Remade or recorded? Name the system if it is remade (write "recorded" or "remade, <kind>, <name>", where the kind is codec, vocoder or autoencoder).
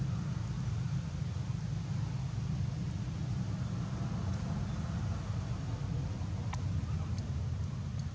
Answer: recorded